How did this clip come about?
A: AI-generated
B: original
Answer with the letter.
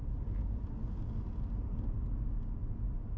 B